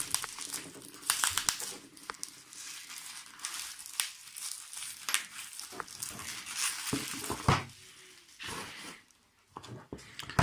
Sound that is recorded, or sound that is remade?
recorded